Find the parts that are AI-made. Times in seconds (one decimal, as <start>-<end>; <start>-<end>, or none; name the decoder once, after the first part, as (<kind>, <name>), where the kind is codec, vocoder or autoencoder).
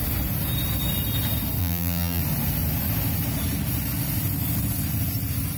1.6-2.2 (vocoder, BigVGAN v2)